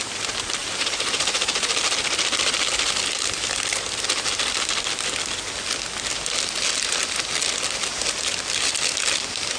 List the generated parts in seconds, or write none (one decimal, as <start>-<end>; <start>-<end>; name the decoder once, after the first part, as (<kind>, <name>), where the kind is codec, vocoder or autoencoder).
0.6-1.7 (vocoder, BigVGAN v2)